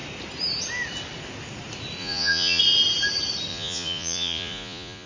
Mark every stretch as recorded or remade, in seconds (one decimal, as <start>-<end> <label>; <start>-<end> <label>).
0.0-2.0 recorded; 2.0-2.6 remade; 2.6-3.5 recorded; 3.5-5.1 remade